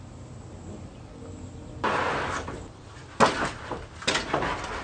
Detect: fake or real real